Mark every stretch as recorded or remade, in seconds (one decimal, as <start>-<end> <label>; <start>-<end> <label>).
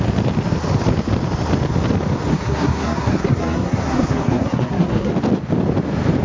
0.0-2.3 recorded; 2.3-5.1 remade; 5.1-6.2 recorded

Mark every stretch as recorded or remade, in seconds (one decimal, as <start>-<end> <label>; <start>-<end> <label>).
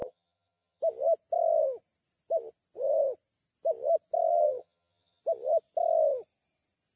0.0-0.8 remade; 0.8-4.3 recorded; 4.3-5.2 remade; 5.2-7.0 recorded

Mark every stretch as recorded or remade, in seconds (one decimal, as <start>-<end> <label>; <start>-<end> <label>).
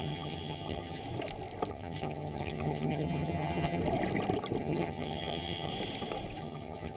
0.0-1.0 remade; 1.0-1.7 recorded; 1.7-3.8 remade; 3.8-4.6 recorded; 4.6-5.7 remade; 5.7-6.4 recorded; 6.4-7.0 remade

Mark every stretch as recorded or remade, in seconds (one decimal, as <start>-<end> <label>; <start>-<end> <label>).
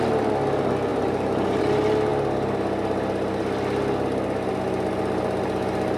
0.0-0.9 recorded; 0.9-1.6 remade; 1.6-6.0 recorded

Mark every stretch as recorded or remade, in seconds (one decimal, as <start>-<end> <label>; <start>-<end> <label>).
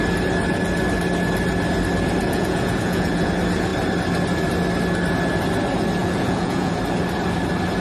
0.0-2.2 recorded; 2.2-3.3 remade; 3.3-6.0 recorded; 6.0-6.8 remade; 6.8-7.8 recorded